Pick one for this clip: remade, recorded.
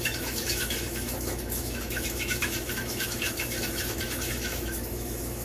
remade